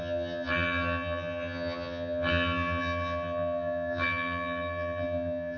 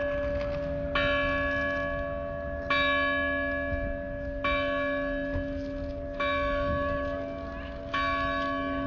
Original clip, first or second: second